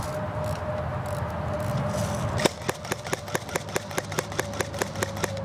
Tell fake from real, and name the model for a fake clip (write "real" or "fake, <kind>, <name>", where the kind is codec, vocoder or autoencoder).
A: real